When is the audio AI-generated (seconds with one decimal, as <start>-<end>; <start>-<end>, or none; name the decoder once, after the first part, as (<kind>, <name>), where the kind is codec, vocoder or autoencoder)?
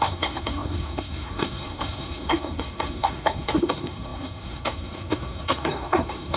0.0-6.4 (codec, SNAC)